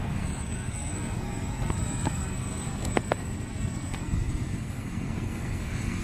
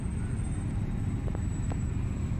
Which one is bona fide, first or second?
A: second